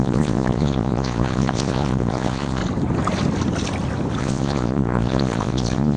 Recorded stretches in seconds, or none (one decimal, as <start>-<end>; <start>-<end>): 2.6-4.2